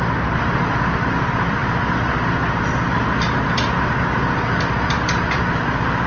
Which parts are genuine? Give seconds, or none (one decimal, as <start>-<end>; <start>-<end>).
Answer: 0.0-6.1

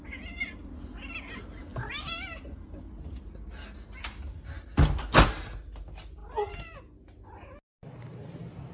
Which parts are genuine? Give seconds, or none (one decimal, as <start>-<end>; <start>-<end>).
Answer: 0.0-8.7

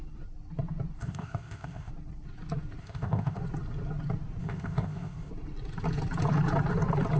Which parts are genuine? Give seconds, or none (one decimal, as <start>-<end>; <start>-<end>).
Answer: 0.0-1.0; 1.9-2.8; 3.4-4.4; 5.3-7.2